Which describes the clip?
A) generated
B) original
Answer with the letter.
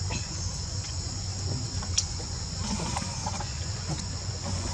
A